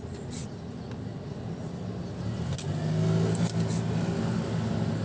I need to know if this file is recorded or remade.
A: recorded